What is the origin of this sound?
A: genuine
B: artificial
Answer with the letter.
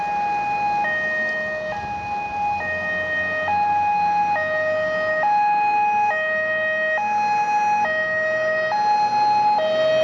A